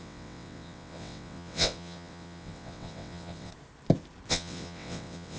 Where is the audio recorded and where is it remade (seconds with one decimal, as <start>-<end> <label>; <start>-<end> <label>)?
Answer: 0.0-3.5 remade; 3.5-4.3 recorded; 4.3-5.4 remade